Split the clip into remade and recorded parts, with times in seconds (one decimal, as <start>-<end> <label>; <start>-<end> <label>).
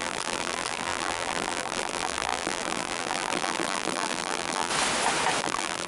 0.0-4.7 remade; 4.7-5.4 recorded; 5.4-5.9 remade